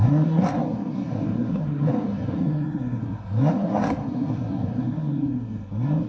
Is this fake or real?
fake